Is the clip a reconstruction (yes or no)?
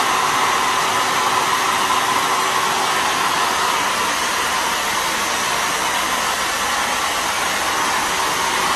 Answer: no